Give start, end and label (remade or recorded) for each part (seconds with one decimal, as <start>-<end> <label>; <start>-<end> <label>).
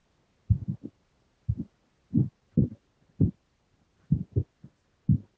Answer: 0.0-5.4 recorded